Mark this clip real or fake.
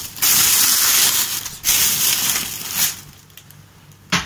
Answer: real